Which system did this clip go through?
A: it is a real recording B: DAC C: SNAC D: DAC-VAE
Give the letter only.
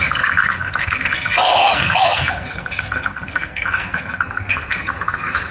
C